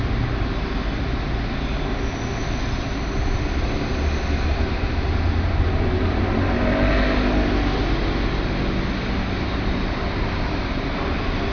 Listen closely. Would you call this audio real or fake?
real